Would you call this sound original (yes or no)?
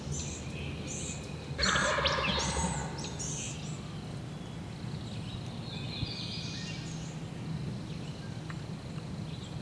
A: yes